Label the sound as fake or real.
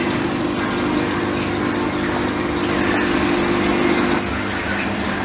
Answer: real